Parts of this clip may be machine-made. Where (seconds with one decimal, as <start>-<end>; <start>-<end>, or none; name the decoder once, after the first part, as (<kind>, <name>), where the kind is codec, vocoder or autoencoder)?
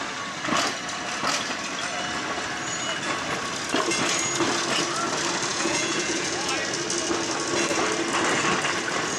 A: 5.5-6.5 (vocoder, Vocos)